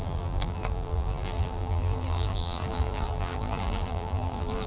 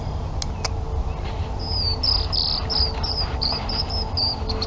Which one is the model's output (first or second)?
first